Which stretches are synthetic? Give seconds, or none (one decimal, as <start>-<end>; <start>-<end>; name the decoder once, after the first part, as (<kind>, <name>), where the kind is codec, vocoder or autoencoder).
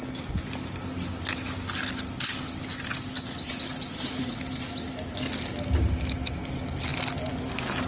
none